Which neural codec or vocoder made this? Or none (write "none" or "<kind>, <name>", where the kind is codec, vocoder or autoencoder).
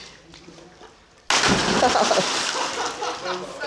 none